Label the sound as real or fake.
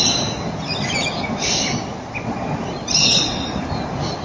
real